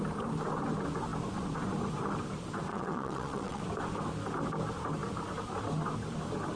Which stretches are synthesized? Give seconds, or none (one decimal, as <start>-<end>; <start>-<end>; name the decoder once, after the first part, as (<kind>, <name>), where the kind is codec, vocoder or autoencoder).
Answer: 2.7-3.6 (vocoder, WaveNeXt)